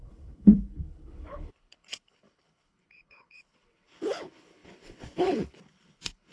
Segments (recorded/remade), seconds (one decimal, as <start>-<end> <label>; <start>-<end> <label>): 0.0-6.3 remade